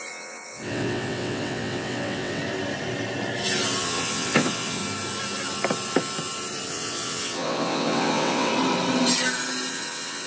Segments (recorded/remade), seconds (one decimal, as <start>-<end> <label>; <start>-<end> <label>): 0.0-2.4 remade; 2.4-3.8 recorded; 3.8-4.8 remade; 4.8-6.7 recorded; 6.7-8.5 remade; 8.5-9.7 recorded; 9.7-10.3 remade